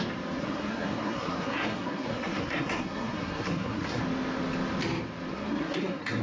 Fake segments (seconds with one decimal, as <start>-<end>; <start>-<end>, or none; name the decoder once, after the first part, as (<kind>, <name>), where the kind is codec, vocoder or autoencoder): 0.4-4.0 (codec, SNAC); 5.3-6.2